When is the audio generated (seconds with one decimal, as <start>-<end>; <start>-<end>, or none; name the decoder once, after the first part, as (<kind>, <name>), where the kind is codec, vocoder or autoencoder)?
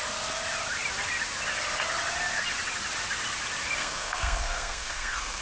3.8-5.4 (codec, SNAC)